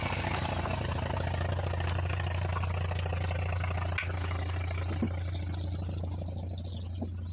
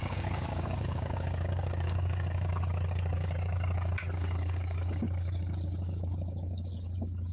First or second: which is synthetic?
second